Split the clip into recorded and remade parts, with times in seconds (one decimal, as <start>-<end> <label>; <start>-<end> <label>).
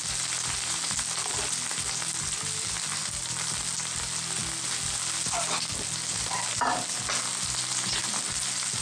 0.0-8.8 recorded